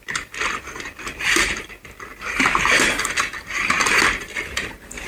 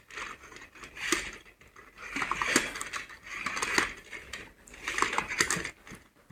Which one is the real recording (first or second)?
second